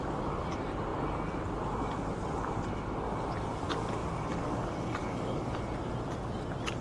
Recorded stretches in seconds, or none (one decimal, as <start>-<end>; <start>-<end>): 0.0-4.0; 5.6-6.8